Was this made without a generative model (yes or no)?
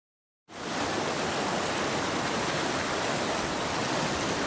yes